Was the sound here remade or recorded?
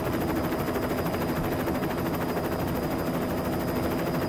recorded